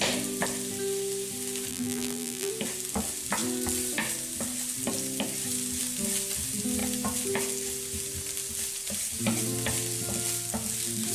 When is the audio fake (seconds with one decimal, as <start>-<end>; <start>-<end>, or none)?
1.7-2.5